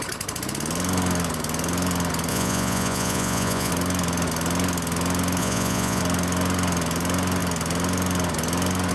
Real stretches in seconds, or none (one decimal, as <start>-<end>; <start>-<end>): 0.0-2.3; 3.7-5.4; 6.0-8.9